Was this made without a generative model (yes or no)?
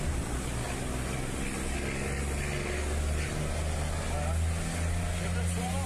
yes